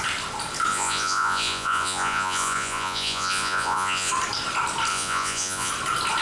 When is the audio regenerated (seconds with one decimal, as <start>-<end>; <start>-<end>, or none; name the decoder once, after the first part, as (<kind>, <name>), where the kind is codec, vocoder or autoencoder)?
0.7-4.1 (vocoder, Vocos); 4.9-5.7